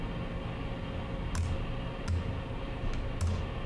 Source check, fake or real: real